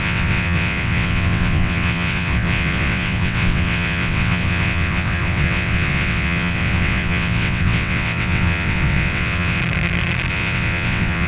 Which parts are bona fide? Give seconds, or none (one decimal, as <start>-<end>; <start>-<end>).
9.6-10.3